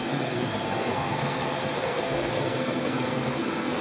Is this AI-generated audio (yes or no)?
yes